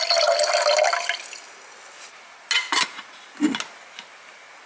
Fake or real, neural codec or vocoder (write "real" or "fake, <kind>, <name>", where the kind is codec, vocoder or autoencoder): real